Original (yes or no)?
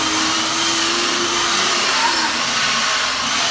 yes